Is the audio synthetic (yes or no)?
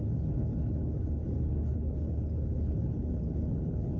yes